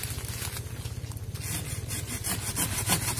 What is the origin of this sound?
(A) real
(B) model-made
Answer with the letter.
A